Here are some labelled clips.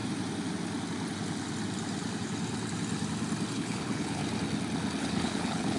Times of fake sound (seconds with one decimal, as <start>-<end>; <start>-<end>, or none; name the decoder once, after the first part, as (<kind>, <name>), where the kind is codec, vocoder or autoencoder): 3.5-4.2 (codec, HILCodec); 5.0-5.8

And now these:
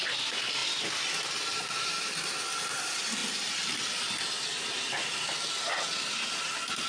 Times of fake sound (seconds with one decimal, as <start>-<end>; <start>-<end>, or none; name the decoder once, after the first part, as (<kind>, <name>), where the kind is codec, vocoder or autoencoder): 0.6-1.9 (vocoder, BigVGAN v2); 3.2-4.0

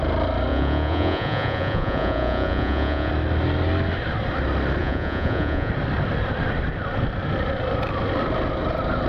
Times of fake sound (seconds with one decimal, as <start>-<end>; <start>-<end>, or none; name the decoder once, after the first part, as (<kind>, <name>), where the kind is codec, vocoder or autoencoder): 0.5-3.1 (vocoder, Vocos); 4.8-5.7

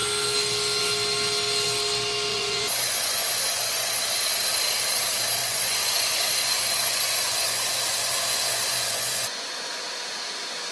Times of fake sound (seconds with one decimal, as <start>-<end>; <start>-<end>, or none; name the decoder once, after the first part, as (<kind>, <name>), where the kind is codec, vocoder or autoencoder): 2.3-3.9 (vocoder, Vocos); 5.4-9.8

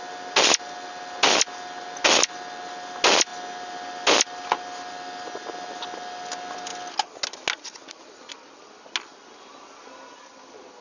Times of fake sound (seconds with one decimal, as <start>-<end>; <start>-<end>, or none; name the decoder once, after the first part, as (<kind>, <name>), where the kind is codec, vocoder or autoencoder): none